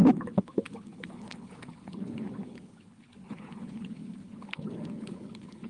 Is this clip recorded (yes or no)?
no